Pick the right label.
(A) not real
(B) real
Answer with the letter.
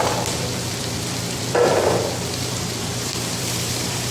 A